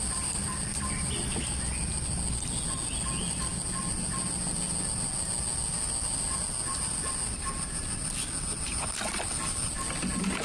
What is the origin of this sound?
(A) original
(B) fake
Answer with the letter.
A